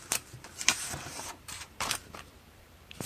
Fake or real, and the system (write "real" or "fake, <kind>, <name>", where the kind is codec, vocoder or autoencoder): fake, vocoder, BigVGAN v2